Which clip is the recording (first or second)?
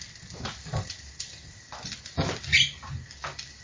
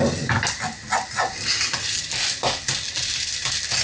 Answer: second